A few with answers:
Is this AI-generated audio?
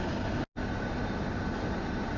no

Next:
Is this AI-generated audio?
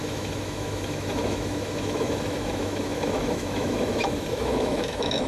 yes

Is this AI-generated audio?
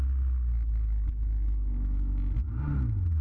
no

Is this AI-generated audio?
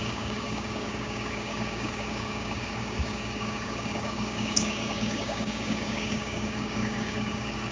yes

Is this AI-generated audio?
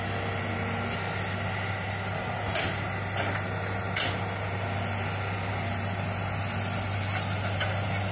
no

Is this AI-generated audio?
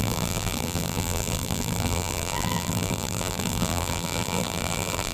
yes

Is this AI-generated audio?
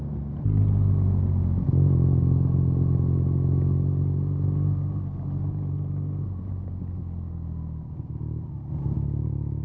no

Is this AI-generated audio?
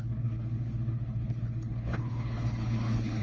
yes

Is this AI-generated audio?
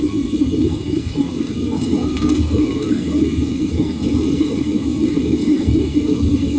yes